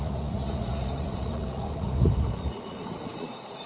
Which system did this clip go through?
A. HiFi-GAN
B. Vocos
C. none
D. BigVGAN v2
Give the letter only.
B